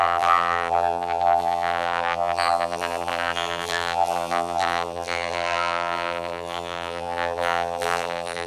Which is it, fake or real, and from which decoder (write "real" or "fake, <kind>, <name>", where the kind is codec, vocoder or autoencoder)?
fake, vocoder, BigVGAN v2